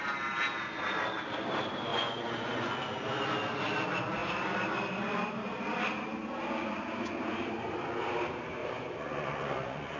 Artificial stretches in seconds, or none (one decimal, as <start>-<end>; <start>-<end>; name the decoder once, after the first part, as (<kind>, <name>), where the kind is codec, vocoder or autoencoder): 1.9-2.7 (vocoder, Vocos); 8.6-10.0